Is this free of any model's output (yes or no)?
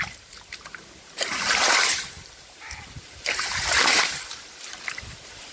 no